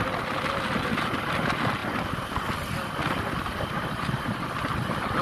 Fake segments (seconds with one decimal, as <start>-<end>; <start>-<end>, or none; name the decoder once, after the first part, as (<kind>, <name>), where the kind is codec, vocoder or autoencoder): none

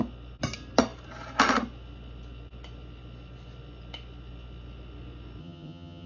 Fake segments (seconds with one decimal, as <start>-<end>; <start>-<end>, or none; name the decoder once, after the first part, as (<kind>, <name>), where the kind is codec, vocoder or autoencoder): 5.4-6.1 (vocoder, HiFi-GAN)

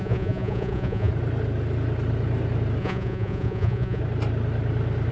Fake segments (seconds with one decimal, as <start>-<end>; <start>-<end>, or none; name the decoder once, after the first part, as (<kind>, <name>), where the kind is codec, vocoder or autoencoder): 0.0-1.1 (vocoder, Vocos); 2.8-4.0